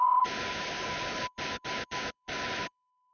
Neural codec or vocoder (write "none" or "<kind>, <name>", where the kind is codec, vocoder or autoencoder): codec, HILCodec